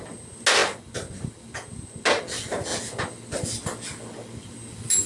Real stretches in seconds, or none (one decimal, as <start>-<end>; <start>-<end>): 0.0-5.1